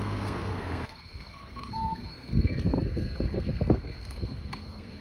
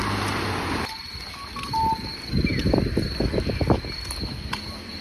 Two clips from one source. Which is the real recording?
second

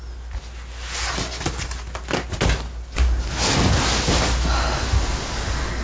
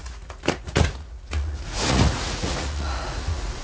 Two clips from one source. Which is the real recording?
first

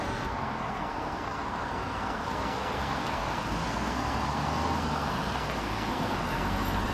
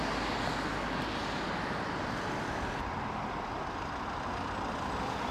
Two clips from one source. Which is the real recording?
second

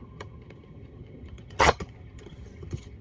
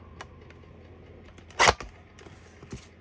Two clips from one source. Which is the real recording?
second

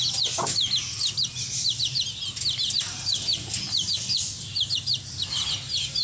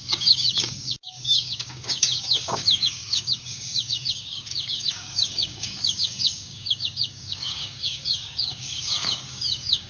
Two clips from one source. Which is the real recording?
first